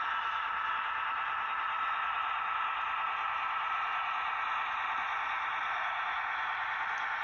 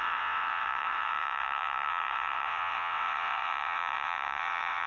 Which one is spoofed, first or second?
second